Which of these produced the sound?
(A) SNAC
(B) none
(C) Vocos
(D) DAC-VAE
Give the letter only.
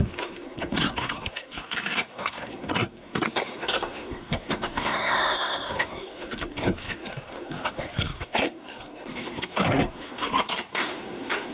A